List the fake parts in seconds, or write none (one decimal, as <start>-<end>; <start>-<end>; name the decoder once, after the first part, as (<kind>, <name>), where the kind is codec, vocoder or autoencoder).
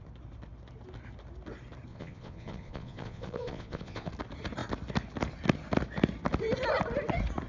1.9-4.1 (vocoder, Vocos)